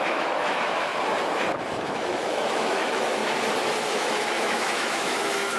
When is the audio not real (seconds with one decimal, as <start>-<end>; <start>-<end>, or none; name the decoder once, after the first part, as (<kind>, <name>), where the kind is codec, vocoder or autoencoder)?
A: 0.0-0.9 (autoencoder, DAC-VAE); 1.7-3.2; 3.9-5.6